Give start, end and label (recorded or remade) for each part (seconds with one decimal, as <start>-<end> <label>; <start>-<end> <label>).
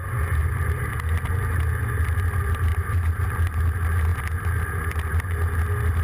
0.0-0.4 recorded; 0.4-0.9 remade; 0.9-2.7 recorded; 2.7-3.2 remade; 3.2-6.0 recorded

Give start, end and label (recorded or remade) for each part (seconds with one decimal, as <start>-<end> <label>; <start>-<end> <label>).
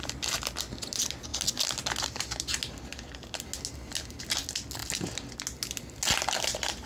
0.0-6.9 recorded